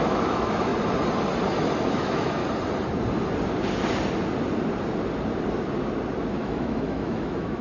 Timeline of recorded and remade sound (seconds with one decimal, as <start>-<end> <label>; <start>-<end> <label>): 0.0-0.7 remade; 0.7-1.9 recorded; 1.9-2.4 remade; 2.4-6.3 recorded; 6.3-7.6 remade